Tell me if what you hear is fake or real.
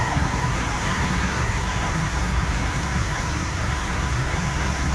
fake